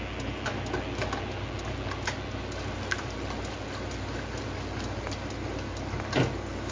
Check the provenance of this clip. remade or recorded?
recorded